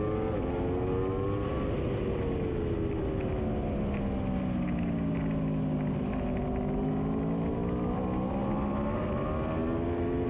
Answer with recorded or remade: recorded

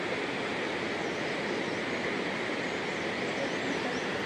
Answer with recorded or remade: recorded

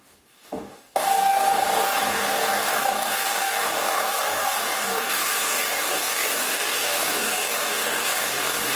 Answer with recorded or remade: remade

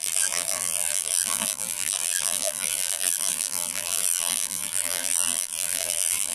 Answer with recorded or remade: remade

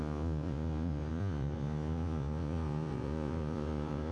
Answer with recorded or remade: remade